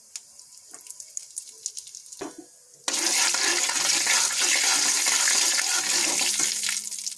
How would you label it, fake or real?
real